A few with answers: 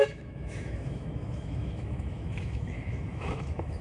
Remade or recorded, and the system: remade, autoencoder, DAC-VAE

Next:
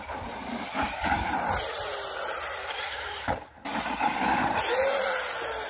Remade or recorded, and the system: recorded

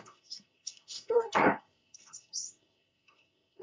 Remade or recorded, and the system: remade, codec, SNAC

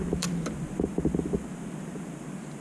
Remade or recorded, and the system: recorded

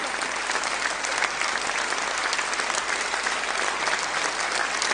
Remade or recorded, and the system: recorded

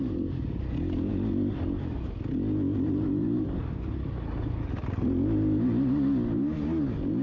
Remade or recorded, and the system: recorded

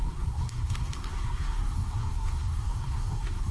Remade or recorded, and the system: remade, codec, SNAC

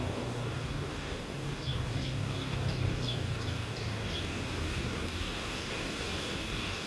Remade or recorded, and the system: remade, codec, DAC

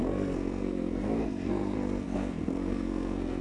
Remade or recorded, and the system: remade, codec, SNAC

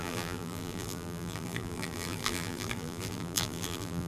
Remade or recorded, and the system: remade, vocoder, BigVGAN v2